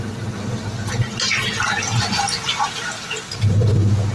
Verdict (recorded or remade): recorded